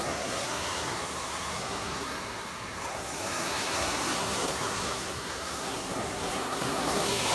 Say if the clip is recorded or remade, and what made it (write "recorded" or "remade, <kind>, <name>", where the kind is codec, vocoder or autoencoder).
remade, codec, SNAC